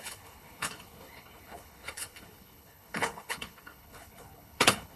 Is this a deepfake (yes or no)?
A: yes